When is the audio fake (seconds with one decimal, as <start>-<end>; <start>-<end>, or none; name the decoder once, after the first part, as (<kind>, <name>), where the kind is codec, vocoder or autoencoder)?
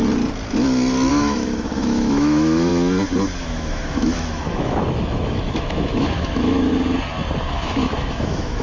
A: 1.1-2.7 (autoencoder, DAC-VAE); 3.4-6.7; 7.5-8.6